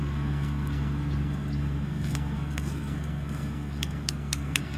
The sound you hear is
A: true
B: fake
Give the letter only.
B